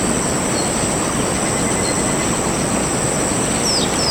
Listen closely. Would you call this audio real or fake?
real